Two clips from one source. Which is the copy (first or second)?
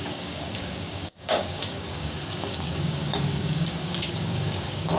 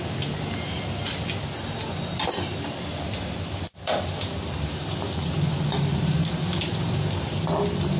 first